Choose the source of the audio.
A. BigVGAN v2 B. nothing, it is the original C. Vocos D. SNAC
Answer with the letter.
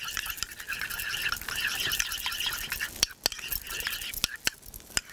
B